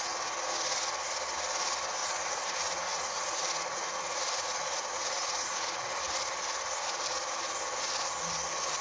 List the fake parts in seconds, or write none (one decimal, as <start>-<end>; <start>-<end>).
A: 2.0-6.0